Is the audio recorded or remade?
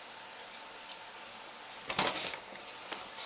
recorded